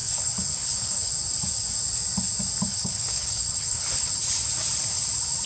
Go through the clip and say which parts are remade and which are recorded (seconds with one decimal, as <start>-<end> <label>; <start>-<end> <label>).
0.0-1.1 remade; 1.1-2.7 recorded; 2.7-4.1 remade; 4.1-5.5 recorded